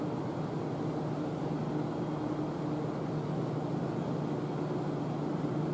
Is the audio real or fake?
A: real